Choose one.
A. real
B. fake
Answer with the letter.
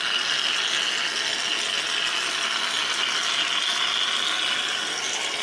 A